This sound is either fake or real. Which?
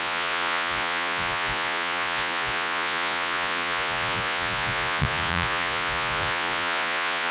fake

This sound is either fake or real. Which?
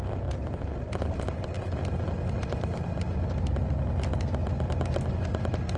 real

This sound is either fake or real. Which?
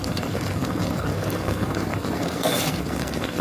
fake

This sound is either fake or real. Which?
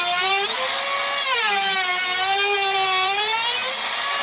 real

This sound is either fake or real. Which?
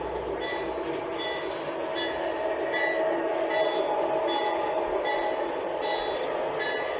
real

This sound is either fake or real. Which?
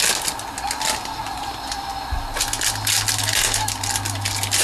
real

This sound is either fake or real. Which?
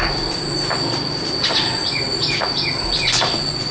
real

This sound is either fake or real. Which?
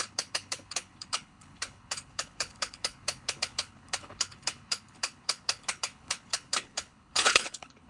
fake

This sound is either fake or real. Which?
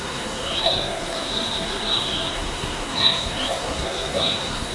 fake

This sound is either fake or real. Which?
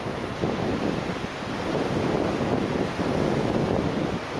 real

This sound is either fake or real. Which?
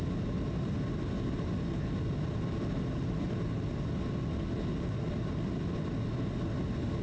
real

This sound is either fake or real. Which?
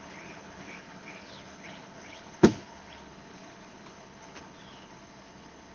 fake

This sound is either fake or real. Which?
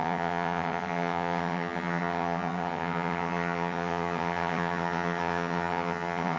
fake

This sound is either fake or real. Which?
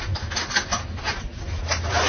real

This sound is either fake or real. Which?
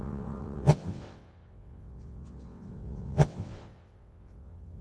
fake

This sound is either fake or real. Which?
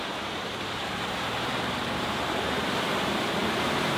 fake